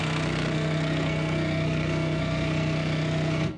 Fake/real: fake